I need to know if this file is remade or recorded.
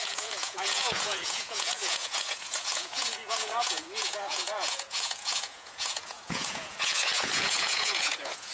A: remade